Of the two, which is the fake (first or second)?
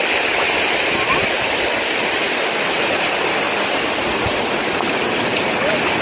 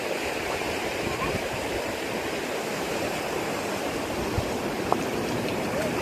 second